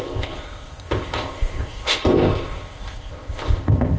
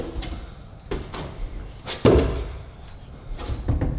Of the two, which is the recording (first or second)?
second